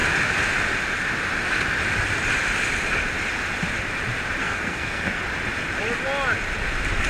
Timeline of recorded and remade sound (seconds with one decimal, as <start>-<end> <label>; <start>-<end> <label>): 0.0-4.4 recorded; 4.4-5.2 remade; 5.2-7.1 recorded

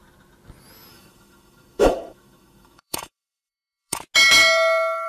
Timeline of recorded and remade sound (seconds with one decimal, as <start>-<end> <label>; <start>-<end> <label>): 0.0-0.9 recorded; 0.9-4.0 remade; 4.0-5.1 recorded

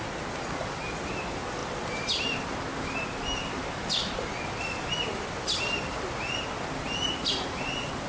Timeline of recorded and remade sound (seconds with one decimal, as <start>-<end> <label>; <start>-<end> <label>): 0.0-8.1 recorded

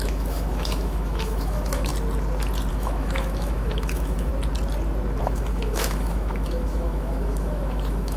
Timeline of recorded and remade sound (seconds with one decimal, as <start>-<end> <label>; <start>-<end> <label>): 0.0-1.9 remade; 1.9-2.7 recorded; 2.7-4.3 remade; 4.3-5.2 recorded; 5.2-8.2 remade